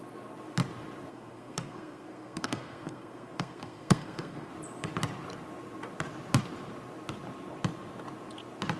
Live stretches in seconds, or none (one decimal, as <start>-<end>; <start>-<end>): 0.0-1.1; 4.5-8.8